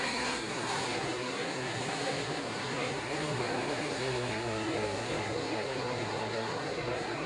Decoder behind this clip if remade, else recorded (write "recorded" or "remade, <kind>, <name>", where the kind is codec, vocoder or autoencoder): remade, codec, SNAC